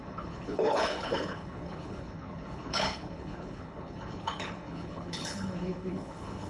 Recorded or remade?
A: remade